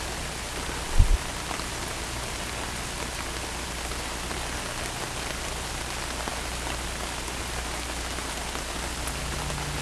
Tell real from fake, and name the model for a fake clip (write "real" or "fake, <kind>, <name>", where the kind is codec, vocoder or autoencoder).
real